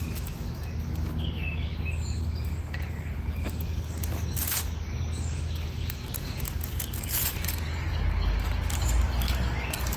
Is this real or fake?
fake